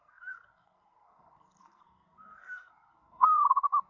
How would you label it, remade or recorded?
remade